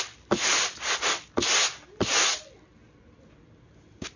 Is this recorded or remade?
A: recorded